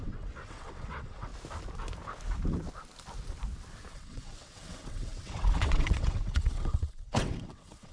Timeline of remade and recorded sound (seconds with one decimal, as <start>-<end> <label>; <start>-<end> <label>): 0.0-1.3 remade; 1.3-3.9 recorded; 3.9-7.9 remade

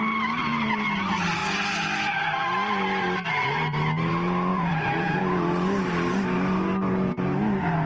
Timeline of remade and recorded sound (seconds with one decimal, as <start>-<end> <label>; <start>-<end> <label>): 0.0-4.5 recorded; 4.5-5.2 remade; 5.2-7.9 recorded

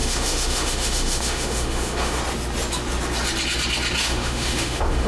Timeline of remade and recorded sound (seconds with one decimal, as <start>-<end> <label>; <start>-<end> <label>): 0.0-2.2 remade; 2.2-4.0 recorded; 4.0-5.1 remade

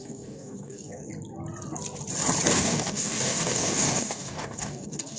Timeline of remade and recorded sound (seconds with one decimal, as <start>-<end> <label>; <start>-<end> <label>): 0.0-1.1 remade; 1.1-2.5 recorded; 2.5-5.2 remade

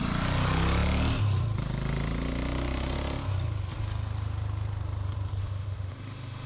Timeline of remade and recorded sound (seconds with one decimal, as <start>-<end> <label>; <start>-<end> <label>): 0.0-5.4 recorded; 5.4-6.5 remade